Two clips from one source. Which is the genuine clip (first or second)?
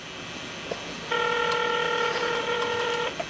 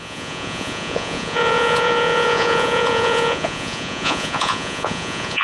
first